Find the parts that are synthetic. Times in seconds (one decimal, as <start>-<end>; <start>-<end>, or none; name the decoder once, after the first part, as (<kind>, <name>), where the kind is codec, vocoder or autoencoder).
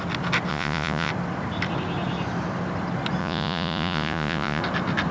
0.5-1.1 (vocoder, Vocos); 3.2-4.6